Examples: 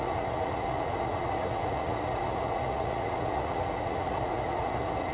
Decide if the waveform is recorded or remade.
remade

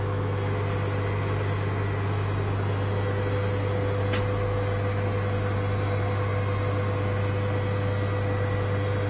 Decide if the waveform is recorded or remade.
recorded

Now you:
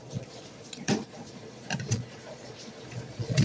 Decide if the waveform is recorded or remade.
remade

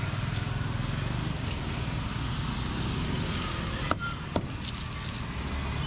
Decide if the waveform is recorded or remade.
recorded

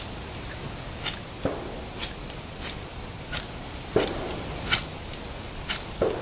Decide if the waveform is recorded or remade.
recorded